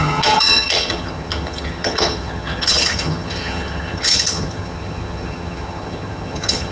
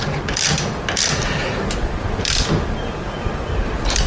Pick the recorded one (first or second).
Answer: second